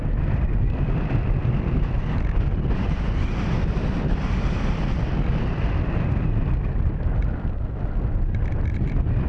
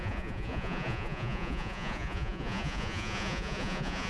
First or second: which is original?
first